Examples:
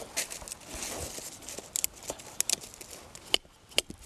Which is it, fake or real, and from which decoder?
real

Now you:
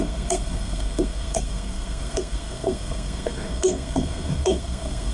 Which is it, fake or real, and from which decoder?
fake, codec, SNAC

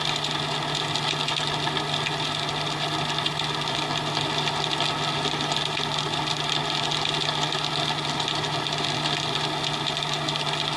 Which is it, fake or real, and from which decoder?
real